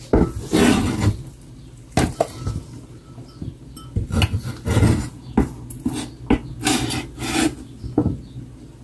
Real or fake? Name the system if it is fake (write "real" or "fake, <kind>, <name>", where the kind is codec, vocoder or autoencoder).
real